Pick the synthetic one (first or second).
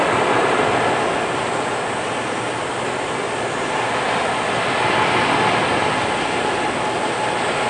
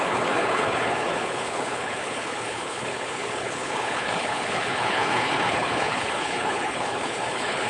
second